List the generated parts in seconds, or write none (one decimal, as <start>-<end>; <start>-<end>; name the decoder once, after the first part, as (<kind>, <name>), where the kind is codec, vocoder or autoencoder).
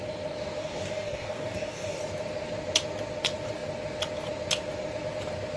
0.6-2.0 (codec, DAC)